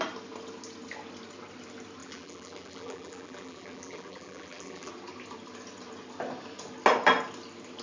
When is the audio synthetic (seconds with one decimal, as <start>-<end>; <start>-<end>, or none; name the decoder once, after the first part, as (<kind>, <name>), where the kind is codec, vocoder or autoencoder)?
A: 2.0-4.9 (vocoder, BigVGAN v2)